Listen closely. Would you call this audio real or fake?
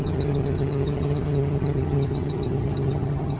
fake